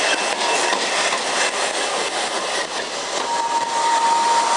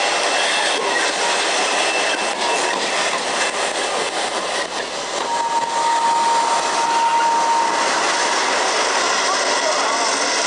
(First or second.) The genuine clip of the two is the second